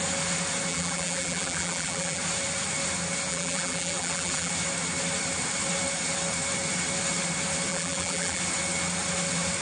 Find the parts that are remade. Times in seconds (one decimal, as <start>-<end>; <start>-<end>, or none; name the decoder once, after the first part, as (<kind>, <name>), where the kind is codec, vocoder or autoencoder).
0.7-2.2 (vocoder, BigVGAN v2); 3.3-4.5; 7.7-8.4